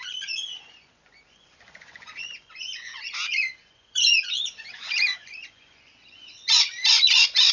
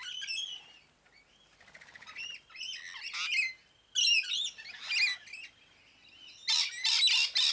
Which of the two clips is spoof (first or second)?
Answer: first